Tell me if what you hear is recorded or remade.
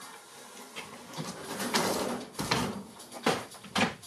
recorded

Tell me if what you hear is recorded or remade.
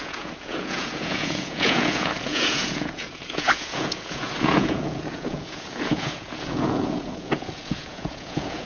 remade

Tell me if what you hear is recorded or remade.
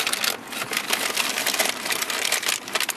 recorded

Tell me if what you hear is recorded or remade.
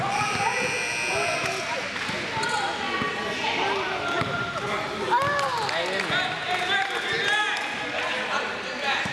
recorded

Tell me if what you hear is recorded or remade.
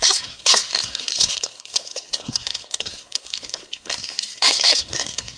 remade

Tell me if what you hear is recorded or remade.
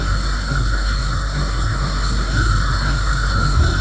remade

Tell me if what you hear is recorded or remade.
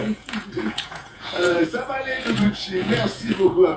remade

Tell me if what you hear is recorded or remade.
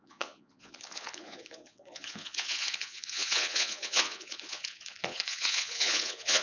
remade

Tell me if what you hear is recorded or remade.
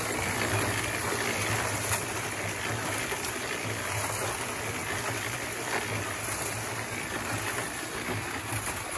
recorded